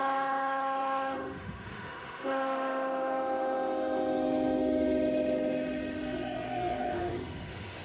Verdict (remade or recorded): remade